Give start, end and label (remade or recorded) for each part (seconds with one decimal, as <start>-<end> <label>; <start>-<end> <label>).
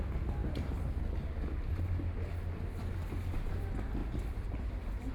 0.0-4.0 recorded; 4.0-5.1 remade